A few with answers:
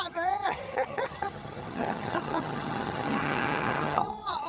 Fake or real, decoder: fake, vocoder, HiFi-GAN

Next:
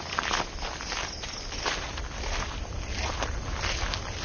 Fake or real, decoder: real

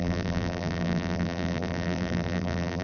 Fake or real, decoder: fake, vocoder, BigVGAN v2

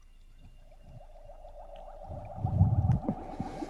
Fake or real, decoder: real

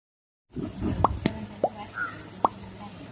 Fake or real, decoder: real